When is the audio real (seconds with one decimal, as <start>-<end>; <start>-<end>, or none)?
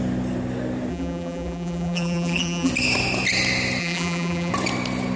0.0-0.9; 2.7-3.8; 4.5-5.2